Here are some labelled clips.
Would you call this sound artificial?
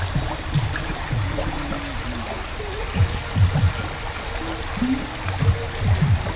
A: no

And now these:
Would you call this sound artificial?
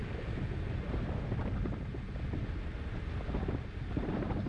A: no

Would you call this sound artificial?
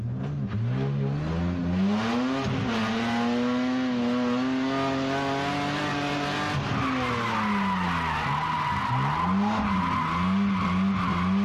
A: no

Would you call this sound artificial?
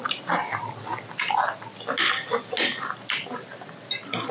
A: no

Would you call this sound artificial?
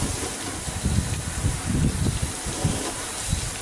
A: no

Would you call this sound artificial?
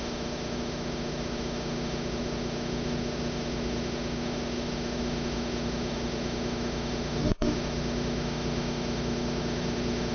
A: yes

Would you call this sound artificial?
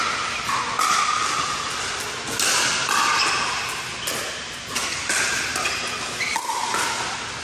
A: no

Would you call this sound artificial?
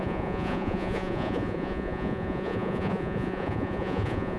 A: yes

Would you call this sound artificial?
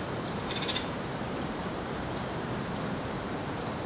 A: yes